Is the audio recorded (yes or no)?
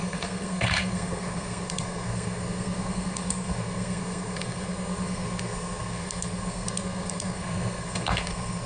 no